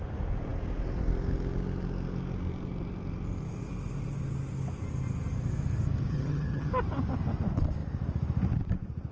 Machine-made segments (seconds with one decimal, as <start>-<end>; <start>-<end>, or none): 6.1-6.7

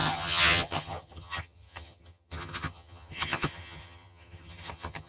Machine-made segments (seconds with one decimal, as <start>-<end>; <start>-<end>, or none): 0.0-5.1

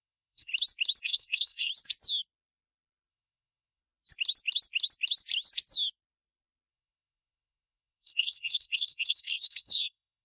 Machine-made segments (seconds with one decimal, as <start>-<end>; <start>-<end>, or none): 0.0-0.5; 1.0-1.7; 3.1-3.8; 6.7-10.2

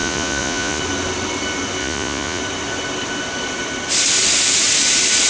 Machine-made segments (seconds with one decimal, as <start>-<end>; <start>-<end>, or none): 0.0-0.8; 1.8-2.4

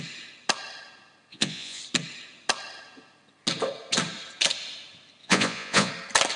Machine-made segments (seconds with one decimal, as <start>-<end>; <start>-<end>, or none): 1.3-1.8; 5.2-5.9